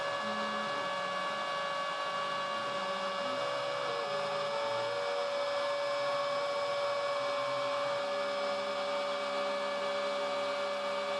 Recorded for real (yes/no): yes